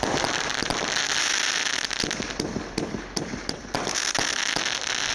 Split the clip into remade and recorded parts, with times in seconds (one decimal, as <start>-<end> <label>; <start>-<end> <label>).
0.0-5.1 recorded